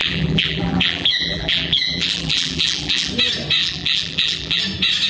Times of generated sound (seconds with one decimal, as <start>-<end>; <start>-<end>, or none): 0.0-3.1; 3.6-4.6